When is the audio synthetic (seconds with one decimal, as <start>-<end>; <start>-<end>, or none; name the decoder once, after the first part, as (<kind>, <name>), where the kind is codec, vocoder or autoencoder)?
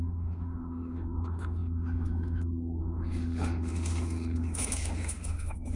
0.0-5.8 (autoencoder, DAC-VAE)